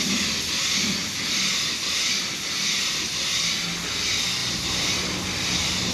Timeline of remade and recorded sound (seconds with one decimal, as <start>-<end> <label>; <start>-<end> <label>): 0.0-4.4 recorded; 4.4-4.9 remade; 4.9-5.9 recorded

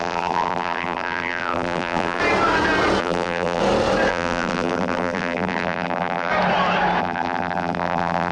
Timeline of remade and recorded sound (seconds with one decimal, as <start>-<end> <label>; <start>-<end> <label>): 0.0-2.2 remade; 2.2-3.0 recorded; 3.0-3.6 remade; 3.6-4.1 recorded; 4.1-6.3 remade; 6.3-7.0 recorded; 7.0-8.3 remade

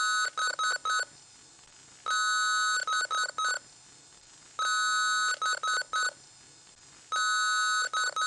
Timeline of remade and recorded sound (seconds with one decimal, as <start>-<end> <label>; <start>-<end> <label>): 0.0-8.3 recorded

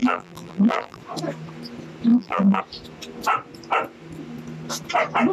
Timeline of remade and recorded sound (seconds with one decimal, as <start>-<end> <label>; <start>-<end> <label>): 0.0-1.0 remade; 1.0-2.1 recorded; 2.1-2.6 remade; 2.6-5.3 recorded

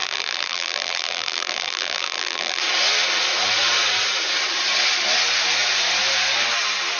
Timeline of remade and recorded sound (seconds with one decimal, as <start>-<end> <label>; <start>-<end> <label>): 0.0-2.6 remade; 2.6-7.0 recorded